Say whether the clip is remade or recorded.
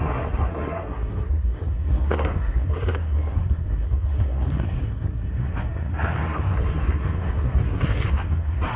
remade